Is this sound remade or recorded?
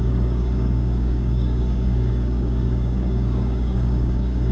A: remade